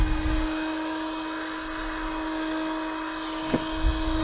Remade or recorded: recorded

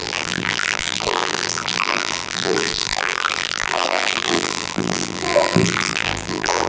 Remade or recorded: remade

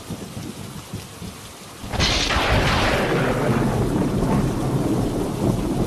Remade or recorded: remade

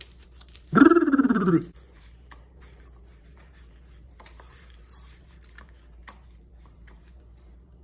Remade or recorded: remade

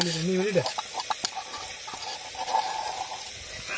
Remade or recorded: recorded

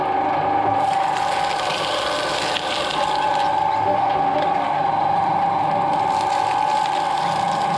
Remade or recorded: recorded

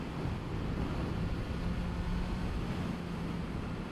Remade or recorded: recorded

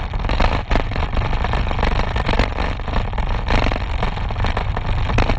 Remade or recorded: recorded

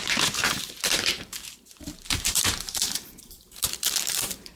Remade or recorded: remade